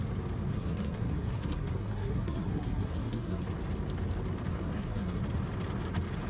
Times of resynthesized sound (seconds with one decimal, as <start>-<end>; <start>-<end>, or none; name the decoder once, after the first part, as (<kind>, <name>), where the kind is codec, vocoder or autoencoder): 0.5-3.5 (codec, SNAC); 4.5-5.2